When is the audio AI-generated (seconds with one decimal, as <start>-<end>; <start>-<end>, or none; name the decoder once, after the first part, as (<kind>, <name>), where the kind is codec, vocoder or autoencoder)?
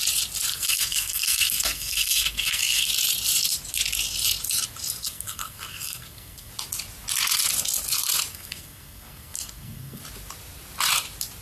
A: 0.5-2.9 (codec, SNAC); 5.0-6.5; 8.3-10.0